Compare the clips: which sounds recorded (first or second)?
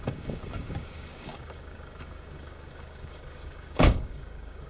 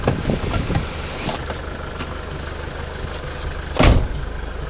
second